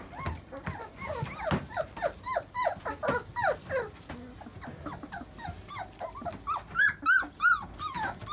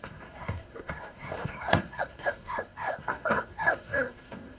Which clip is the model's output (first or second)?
second